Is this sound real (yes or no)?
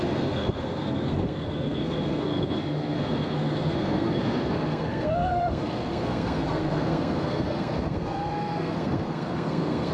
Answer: no